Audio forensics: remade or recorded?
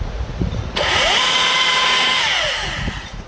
remade